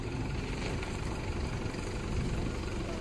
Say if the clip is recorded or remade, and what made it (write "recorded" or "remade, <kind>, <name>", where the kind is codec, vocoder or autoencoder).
recorded